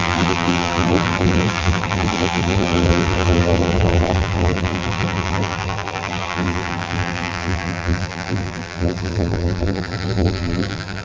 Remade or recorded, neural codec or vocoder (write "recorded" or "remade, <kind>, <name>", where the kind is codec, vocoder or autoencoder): remade, vocoder, BigVGAN v2